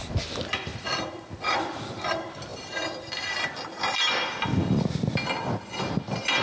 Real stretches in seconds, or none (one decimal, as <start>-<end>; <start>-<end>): 0.0-6.4